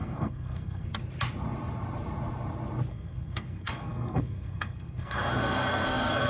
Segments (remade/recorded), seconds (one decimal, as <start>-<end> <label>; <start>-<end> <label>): 0.0-0.9 remade; 0.9-2.9 recorded; 2.9-6.3 remade